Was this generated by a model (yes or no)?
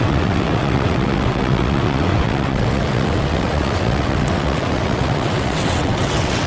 yes